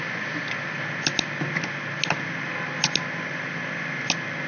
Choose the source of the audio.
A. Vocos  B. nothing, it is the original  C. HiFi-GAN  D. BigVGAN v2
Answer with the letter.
B